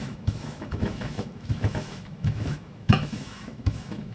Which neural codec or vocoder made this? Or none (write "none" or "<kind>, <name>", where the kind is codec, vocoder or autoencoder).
autoencoder, DAC-VAE